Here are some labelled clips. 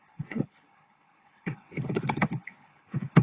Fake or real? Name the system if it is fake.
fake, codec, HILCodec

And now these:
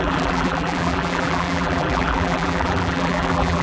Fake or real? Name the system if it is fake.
fake, vocoder, BigVGAN v2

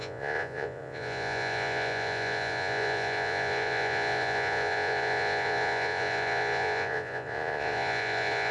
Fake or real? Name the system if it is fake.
fake, vocoder, Vocos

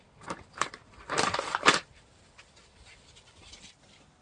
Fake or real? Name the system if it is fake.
fake, vocoder, BigVGAN v2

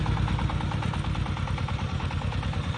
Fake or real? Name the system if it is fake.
real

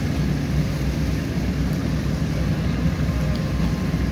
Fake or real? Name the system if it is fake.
real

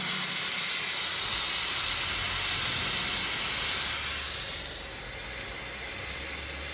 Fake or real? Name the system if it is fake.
real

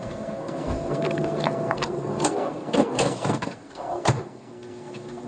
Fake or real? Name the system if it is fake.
fake, codec, SNAC